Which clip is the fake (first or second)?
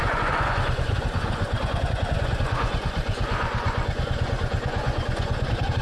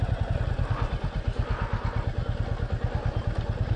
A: first